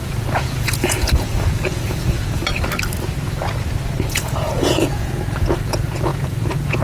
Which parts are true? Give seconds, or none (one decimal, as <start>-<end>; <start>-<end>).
2.4-4.1